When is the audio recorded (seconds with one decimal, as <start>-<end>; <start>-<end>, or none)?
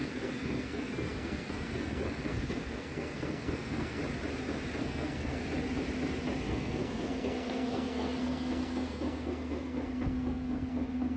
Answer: 4.0-4.8; 5.4-6.5